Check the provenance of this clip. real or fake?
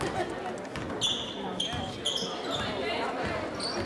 real